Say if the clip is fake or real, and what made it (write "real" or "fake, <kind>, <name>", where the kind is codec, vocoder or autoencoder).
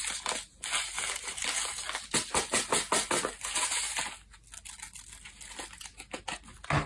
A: real